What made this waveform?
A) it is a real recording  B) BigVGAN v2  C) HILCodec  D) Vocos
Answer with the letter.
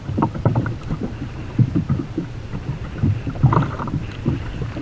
B